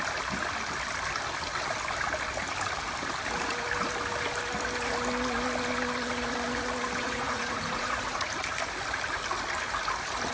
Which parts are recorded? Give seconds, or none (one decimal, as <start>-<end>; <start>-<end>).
0.0-7.0; 8.3-10.3